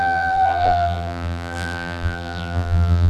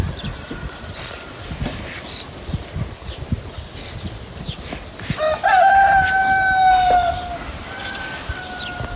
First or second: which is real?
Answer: second